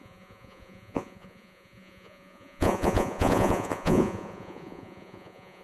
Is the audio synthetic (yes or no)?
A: yes